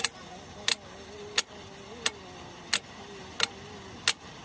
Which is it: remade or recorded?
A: recorded